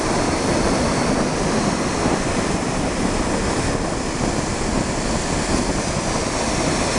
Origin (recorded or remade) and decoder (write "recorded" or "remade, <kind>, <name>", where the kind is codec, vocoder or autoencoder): recorded